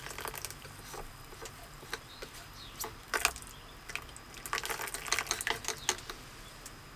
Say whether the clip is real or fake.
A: real